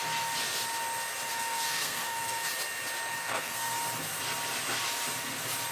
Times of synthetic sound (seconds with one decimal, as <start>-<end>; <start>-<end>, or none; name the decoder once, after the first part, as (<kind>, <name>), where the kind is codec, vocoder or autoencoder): 1.3-2.5 (codec, SNAC); 3.1-3.7